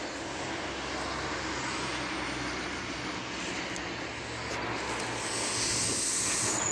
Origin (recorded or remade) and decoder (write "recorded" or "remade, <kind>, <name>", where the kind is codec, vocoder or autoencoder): recorded